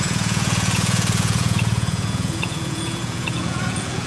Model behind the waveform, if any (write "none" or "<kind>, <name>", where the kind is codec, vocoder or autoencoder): vocoder, Vocos